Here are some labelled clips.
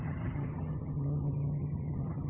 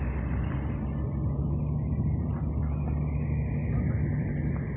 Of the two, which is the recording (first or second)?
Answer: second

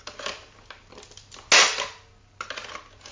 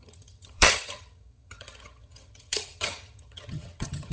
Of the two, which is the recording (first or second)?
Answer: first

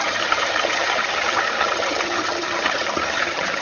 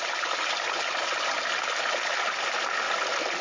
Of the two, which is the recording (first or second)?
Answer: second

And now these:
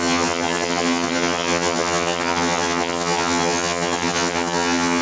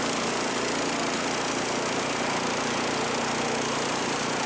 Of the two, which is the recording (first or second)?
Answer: second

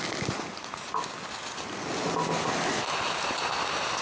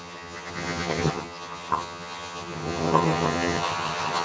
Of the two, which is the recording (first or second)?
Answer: first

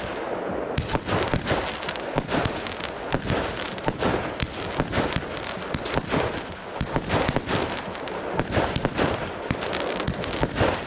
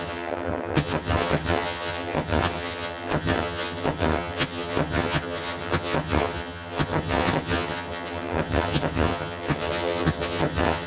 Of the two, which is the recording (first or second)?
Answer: first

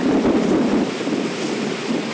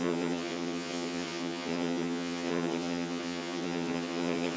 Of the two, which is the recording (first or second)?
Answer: first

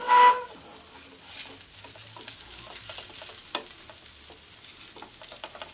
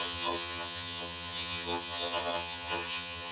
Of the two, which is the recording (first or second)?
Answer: first